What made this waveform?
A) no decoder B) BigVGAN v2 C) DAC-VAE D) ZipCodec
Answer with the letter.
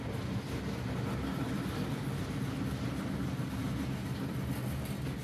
A